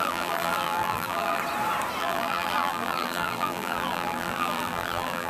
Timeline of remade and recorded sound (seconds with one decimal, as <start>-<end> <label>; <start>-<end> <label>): 0.0-1.4 remade; 1.4-2.0 recorded; 2.0-5.3 remade